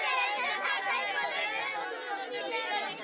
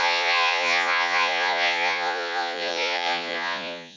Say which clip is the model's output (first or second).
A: second